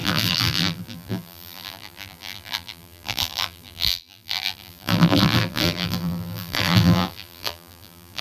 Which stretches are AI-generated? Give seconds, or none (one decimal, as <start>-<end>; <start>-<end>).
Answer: 0.0-8.2